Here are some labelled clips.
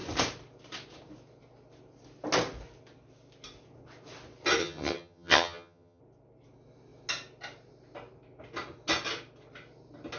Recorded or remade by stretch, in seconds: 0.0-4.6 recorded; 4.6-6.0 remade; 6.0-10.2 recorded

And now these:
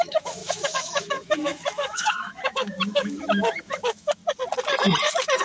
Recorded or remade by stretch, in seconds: 0.0-4.2 remade; 4.2-5.0 recorded; 5.0-5.4 remade

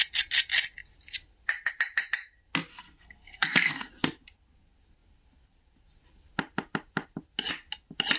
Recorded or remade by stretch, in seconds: 0.0-2.7 recorded; 2.7-3.9 remade; 3.9-8.2 recorded

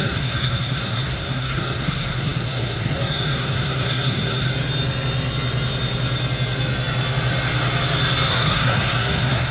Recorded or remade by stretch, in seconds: 0.0-4.5 remade; 4.5-8.3 recorded; 8.3-9.5 remade

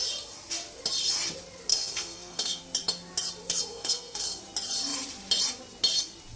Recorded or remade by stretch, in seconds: 0.0-1.7 recorded; 1.7-2.6 remade; 2.6-3.7 recorded; 3.7-4.4 remade; 4.4-6.4 recorded

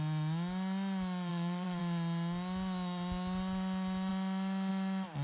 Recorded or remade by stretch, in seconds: 0.0-1.3 recorded; 1.3-1.8 remade; 1.8-5.2 recorded